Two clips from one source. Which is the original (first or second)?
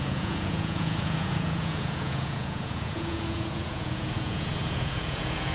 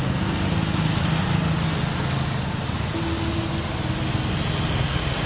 second